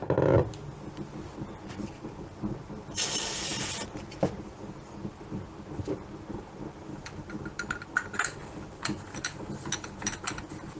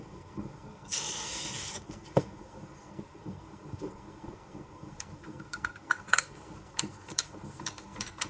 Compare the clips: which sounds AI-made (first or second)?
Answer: second